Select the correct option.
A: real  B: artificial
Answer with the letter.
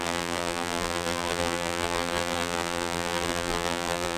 B